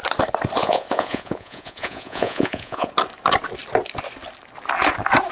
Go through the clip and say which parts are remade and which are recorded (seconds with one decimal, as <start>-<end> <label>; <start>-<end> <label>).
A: 0.0-0.6 recorded; 0.6-2.9 remade; 2.9-5.3 recorded